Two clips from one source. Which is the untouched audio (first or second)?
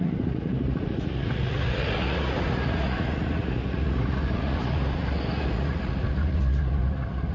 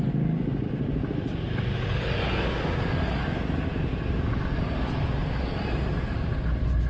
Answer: second